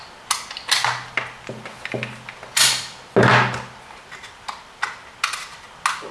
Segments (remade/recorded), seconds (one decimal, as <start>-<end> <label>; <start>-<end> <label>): 0.0-6.1 recorded